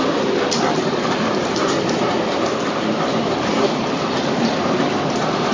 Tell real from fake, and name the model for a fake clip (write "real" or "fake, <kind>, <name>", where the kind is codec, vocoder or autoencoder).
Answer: fake, vocoder, BigVGAN v2